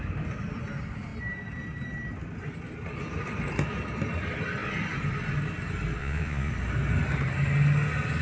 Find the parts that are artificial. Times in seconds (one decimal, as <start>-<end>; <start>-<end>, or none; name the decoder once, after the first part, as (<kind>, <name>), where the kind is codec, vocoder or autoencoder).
6.0-6.5 (vocoder, Vocos)